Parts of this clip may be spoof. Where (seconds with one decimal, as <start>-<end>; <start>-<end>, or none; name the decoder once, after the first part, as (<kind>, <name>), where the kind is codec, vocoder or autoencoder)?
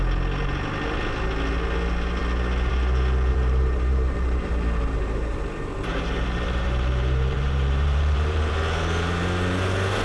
3.3-8.5 (vocoder, BigVGAN v2)